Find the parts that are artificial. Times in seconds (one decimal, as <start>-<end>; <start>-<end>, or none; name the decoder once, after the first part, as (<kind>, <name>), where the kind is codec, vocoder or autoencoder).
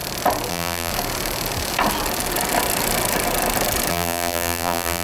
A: 0.5-0.9 (vocoder, BigVGAN v2); 3.9-5.0